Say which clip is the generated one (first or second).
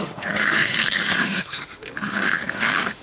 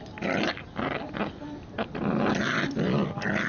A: first